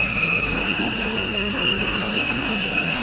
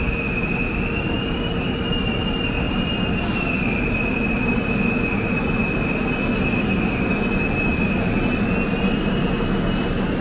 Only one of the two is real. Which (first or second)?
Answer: second